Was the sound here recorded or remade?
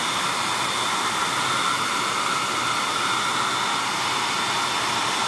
recorded